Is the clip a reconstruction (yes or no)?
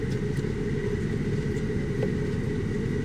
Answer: no